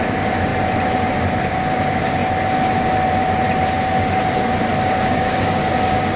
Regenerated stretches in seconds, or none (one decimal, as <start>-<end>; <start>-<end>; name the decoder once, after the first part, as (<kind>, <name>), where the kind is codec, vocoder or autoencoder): 4.7-5.7 (codec, DAC)